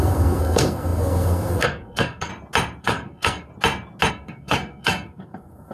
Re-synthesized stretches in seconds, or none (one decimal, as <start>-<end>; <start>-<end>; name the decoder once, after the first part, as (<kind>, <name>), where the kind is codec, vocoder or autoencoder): 0.0-2.3 (codec, SNAC); 2.8-3.5; 4.1-5.7